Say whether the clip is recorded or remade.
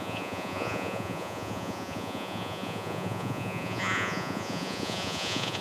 remade